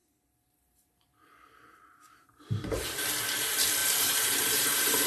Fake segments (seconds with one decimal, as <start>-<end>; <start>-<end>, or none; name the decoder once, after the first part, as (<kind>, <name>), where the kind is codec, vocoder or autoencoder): 0.0-3.1 (vocoder, BigVGAN v2); 3.8-5.1